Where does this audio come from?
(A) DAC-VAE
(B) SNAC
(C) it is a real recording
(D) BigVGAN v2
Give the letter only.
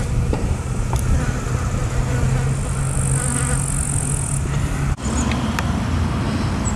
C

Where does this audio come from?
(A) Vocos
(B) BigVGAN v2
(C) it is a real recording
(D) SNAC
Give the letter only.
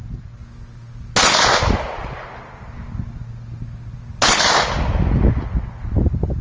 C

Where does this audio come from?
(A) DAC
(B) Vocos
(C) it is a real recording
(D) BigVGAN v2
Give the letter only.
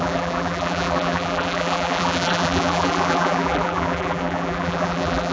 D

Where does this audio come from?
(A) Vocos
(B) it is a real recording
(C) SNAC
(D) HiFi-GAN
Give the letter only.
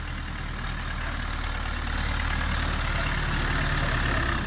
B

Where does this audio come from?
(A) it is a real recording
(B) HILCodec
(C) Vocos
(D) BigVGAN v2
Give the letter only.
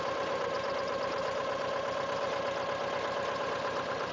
A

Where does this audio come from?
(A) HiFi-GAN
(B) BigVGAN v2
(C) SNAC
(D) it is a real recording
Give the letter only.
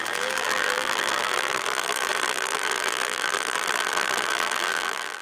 B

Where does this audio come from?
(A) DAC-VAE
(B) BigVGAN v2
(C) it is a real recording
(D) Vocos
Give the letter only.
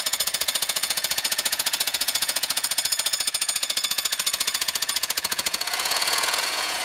D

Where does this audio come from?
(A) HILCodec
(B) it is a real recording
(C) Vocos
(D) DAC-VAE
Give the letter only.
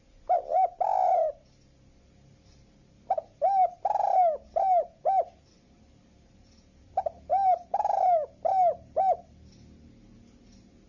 B